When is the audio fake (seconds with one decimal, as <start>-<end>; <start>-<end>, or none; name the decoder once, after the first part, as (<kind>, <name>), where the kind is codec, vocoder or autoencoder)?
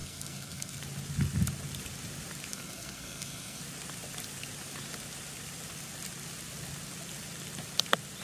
0.0-0.8 (codec, SNAC); 2.5-3.6